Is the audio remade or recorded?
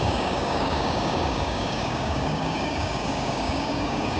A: remade